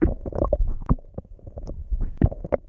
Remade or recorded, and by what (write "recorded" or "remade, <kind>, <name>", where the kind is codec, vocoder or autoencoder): remade, autoencoder, DAC-VAE